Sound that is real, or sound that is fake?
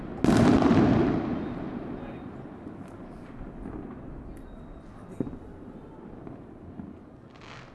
real